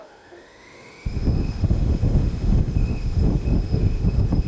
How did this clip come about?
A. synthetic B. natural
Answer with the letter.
A